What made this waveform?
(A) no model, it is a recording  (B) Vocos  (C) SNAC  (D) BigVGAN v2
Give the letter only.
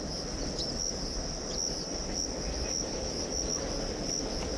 A